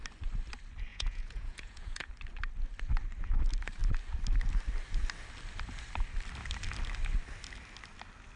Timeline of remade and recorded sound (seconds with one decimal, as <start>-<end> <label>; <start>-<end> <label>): 0.0-0.9 recorded; 0.9-2.1 remade; 2.1-8.4 recorded

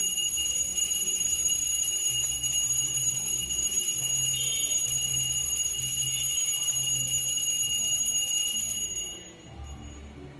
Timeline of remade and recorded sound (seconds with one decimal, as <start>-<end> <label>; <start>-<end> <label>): 0.0-0.7 recorded; 0.7-1.6 remade; 1.6-2.2 recorded; 2.2-4.0 remade; 4.0-10.4 recorded

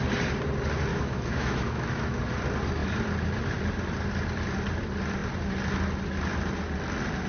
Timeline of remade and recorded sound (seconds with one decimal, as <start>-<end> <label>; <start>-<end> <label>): 0.0-0.9 recorded; 0.9-2.2 remade; 2.2-7.3 recorded

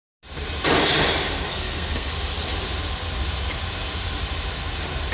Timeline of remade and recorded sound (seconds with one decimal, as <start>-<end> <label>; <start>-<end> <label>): 0.0-1.5 recorded; 1.5-2.1 remade; 2.1-5.1 recorded

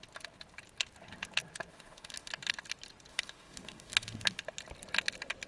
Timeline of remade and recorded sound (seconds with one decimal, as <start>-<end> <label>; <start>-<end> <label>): 0.0-1.7 recorded; 1.7-2.3 remade; 2.3-3.1 recorded; 3.1-4.4 remade; 4.4-5.5 recorded